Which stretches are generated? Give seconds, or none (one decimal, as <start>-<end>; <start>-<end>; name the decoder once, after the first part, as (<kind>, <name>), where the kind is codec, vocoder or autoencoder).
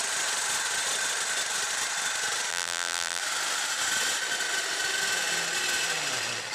2.5-3.2 (vocoder, BigVGAN v2)